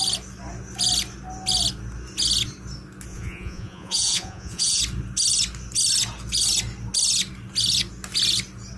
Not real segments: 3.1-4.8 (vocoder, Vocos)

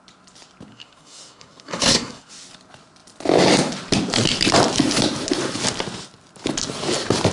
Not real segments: 0.7-2.3 (codec, SNAC)